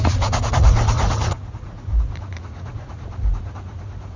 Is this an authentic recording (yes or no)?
no